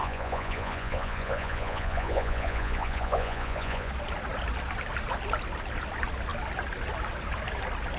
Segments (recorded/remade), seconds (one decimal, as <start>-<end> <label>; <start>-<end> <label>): 0.0-3.9 remade; 3.9-8.0 recorded